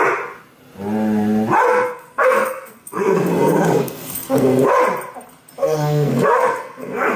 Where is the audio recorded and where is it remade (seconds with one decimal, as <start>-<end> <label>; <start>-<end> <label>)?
0.0-1.7 recorded; 1.7-4.7 remade; 4.7-5.6 recorded; 5.6-7.2 remade